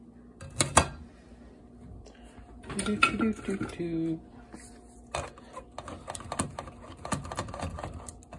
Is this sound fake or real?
real